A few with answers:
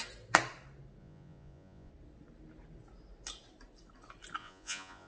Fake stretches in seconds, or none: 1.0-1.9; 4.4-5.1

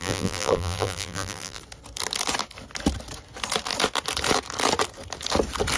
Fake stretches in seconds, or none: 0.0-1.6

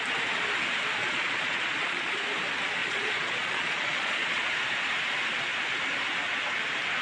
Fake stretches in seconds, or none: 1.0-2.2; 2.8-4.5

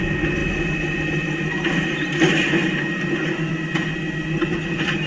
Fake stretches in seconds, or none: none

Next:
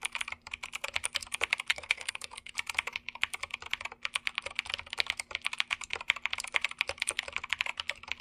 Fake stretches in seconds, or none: 1.7-2.5